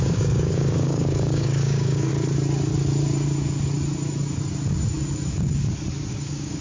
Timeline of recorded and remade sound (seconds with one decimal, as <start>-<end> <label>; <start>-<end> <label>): 0.0-2.1 remade; 2.1-6.1 recorded; 6.1-6.6 remade